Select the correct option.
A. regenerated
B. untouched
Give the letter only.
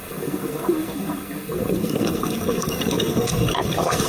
A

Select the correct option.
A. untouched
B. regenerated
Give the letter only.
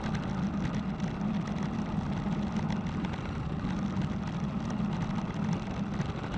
A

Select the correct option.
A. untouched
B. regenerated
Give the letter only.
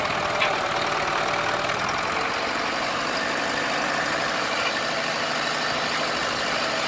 A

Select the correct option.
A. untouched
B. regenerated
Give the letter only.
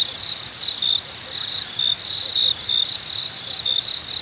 A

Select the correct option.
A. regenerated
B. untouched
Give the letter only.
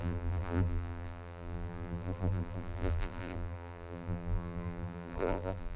A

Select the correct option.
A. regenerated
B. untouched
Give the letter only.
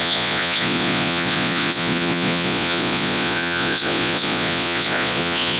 A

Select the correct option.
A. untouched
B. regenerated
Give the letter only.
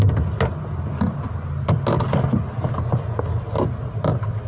A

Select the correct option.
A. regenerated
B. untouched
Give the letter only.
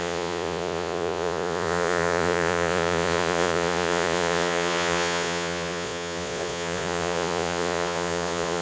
A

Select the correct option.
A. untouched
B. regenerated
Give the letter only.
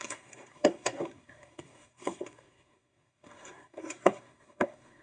B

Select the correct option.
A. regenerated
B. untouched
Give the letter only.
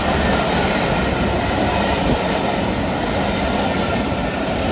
B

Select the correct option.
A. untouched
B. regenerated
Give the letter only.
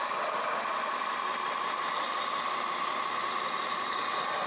A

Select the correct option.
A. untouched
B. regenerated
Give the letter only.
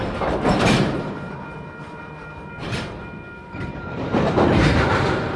B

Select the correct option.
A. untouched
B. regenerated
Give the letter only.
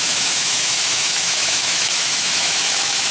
B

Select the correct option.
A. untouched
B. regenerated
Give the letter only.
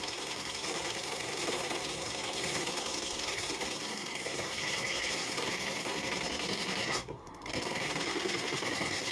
B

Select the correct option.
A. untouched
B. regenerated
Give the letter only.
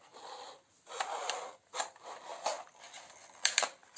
A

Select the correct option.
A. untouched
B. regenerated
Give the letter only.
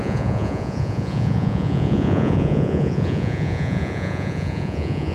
B